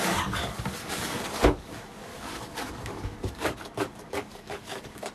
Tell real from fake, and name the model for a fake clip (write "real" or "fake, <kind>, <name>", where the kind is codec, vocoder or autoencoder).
fake, codec, DAC